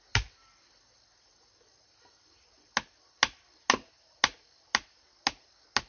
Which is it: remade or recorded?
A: recorded